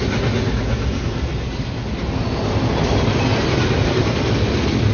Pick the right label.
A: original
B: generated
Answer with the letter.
A